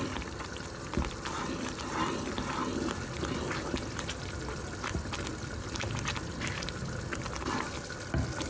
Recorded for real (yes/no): yes